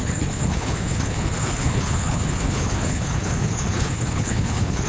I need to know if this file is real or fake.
fake